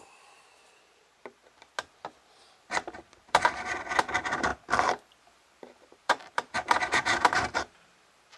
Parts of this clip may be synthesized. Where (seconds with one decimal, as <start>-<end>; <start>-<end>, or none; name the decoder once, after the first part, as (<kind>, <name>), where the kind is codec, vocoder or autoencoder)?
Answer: 0.0-1.4 (vocoder, BigVGAN v2); 2.4-4.5; 5.2-8.4